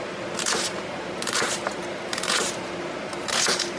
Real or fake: real